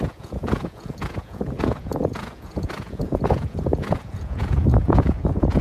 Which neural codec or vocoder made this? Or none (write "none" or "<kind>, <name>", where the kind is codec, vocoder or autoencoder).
vocoder, Vocos